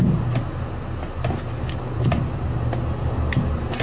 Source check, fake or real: real